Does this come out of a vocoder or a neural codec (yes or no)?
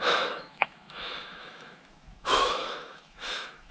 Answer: yes